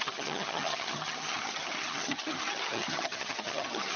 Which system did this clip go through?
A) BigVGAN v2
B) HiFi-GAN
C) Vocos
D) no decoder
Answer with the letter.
B